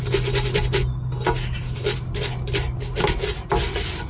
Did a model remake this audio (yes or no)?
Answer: no